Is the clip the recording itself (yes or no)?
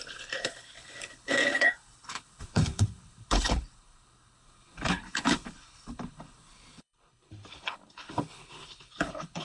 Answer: no